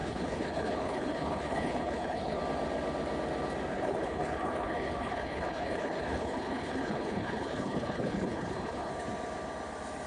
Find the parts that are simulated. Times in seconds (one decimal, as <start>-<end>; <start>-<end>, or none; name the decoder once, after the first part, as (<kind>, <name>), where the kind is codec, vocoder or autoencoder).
0.0-2.4 (codec, HILCodec); 3.7-8.9